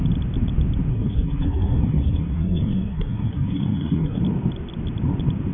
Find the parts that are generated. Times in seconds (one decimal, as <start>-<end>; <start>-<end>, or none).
0.9-4.2